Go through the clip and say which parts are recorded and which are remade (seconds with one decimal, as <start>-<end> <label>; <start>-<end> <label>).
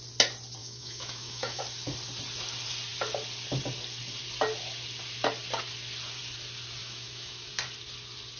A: 0.0-0.6 recorded; 0.6-1.6 remade; 1.6-6.8 recorded; 6.8-7.5 remade; 7.5-8.4 recorded